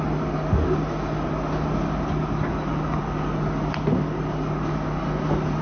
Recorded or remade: recorded